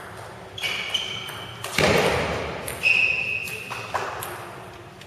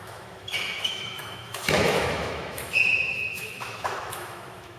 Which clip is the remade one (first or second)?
second